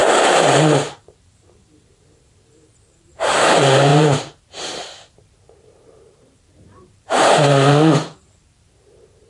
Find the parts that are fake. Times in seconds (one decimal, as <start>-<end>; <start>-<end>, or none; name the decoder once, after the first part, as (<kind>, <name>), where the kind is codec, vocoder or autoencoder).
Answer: 0.9-9.3 (vocoder, BigVGAN v2)